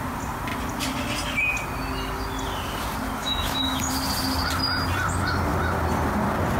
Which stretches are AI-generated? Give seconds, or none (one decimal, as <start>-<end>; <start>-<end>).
3.2-3.9